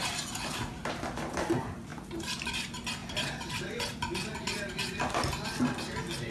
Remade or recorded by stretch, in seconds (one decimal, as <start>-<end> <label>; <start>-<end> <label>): 0.0-1.9 recorded; 1.9-2.5 remade; 2.5-6.3 recorded